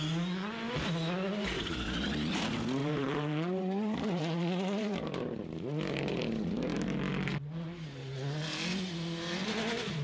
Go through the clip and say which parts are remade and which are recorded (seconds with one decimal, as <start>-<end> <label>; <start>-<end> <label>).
0.0-2.8 recorded; 2.8-5.4 remade; 5.4-10.0 recorded